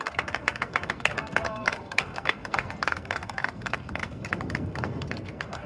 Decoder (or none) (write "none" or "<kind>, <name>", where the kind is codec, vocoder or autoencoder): codec, SNAC